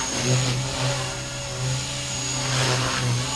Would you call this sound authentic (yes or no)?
yes